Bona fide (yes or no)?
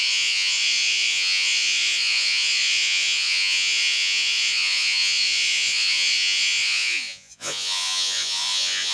no